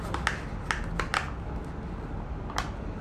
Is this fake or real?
real